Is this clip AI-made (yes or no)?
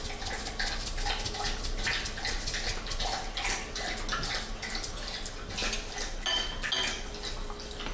no